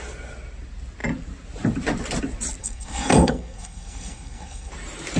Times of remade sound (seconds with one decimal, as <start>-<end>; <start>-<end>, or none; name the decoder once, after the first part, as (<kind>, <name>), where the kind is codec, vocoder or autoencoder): 2.6-4.7 (codec, SNAC)